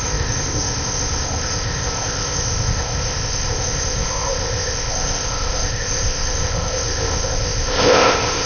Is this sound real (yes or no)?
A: no